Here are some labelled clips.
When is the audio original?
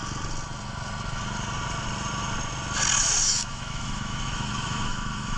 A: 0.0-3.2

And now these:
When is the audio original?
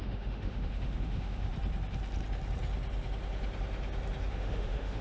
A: 1.5-4.3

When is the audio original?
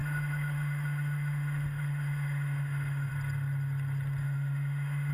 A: 3.1-4.2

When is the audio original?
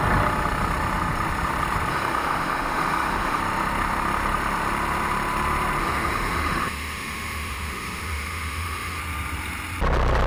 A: 0.0-1.9; 3.4-5.8; 9.0-10.3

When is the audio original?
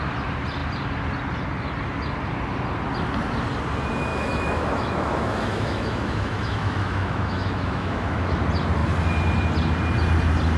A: 0.0-4.1; 8.4-10.6